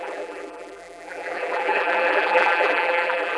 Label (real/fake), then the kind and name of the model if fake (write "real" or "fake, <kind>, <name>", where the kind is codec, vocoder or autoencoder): fake, vocoder, BigVGAN v2